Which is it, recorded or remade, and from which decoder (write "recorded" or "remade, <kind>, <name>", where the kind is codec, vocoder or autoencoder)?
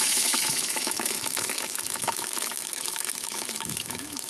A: remade, autoencoder, DAC-VAE